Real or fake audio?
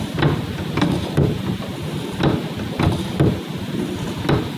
real